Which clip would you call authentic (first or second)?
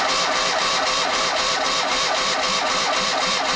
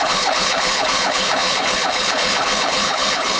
first